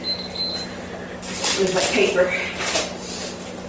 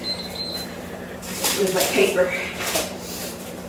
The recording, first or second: first